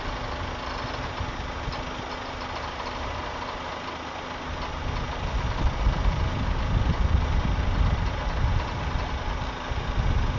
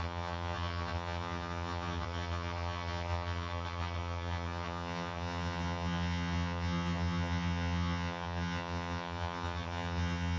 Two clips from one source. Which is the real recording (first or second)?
first